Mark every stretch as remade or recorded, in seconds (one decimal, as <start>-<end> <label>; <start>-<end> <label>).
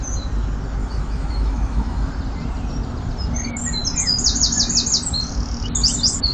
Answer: 0.0-0.8 recorded; 0.8-2.1 remade; 2.1-6.3 recorded